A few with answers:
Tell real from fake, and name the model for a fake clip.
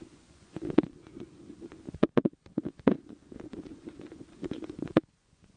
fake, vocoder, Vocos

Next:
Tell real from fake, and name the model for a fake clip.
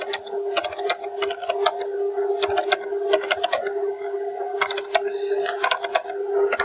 real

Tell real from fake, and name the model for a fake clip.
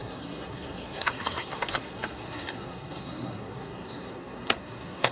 fake, codec, SNAC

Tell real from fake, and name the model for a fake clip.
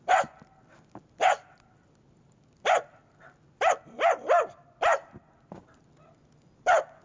real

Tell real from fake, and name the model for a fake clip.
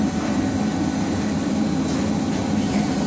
real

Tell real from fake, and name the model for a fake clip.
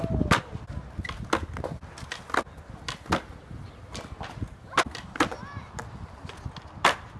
real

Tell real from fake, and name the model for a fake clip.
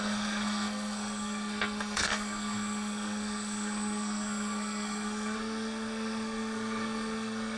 fake, codec, SNAC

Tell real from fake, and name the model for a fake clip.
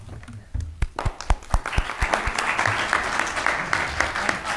real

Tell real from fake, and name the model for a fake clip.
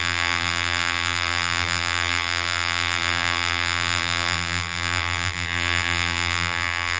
fake, vocoder, BigVGAN v2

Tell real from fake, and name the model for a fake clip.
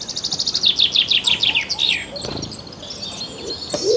real